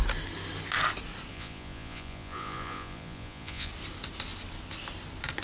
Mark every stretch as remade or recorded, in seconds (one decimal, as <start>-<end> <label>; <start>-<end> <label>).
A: 0.0-1.3 recorded; 1.3-3.7 remade; 3.7-5.4 recorded